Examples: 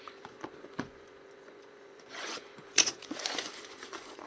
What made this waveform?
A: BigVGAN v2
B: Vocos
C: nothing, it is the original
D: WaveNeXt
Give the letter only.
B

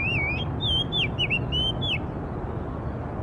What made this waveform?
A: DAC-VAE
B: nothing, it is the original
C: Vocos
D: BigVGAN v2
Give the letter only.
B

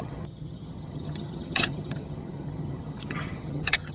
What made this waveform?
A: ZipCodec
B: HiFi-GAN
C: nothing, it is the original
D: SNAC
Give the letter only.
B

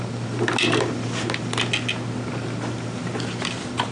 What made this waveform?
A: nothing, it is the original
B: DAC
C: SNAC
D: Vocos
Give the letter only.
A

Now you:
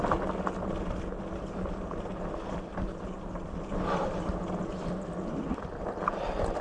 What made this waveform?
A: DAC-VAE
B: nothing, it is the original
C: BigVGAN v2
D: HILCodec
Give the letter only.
B